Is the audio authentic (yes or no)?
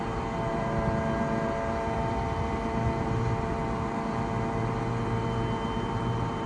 no